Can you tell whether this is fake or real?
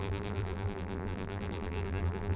fake